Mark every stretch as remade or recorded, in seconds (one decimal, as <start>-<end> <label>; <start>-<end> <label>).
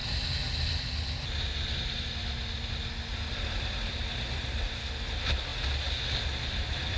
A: 0.0-3.3 recorded; 3.3-5.5 remade; 5.5-6.5 recorded; 6.5-7.0 remade